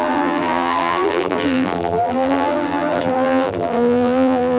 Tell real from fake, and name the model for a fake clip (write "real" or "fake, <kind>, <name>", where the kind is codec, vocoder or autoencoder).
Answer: fake, vocoder, BigVGAN v2